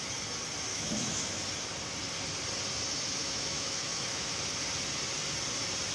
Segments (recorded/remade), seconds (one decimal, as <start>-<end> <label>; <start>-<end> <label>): 0.0-0.7 recorded; 0.7-1.4 remade; 1.4-3.2 recorded; 3.2-4.4 remade; 4.4-5.9 recorded